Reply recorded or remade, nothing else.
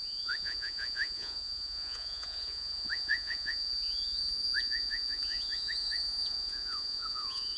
remade